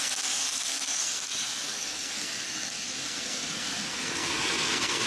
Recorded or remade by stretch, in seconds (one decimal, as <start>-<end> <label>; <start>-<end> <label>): 0.0-5.1 remade